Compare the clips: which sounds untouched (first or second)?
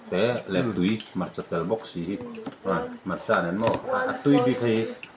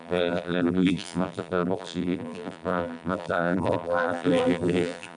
first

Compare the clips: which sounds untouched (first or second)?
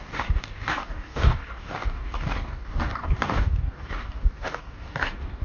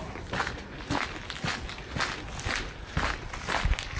second